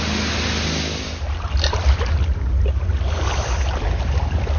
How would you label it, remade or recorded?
recorded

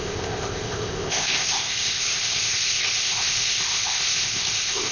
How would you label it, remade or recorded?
remade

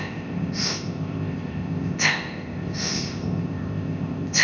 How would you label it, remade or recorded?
remade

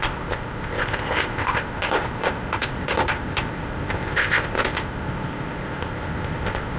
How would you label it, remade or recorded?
remade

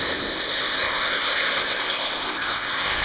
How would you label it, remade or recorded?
remade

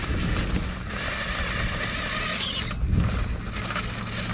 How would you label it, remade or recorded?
recorded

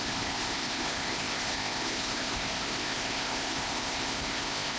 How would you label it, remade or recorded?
remade